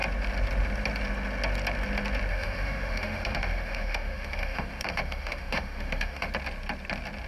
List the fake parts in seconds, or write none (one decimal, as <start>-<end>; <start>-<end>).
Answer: 2.3-6.3